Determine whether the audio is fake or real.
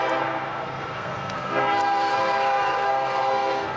fake